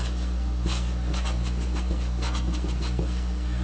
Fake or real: fake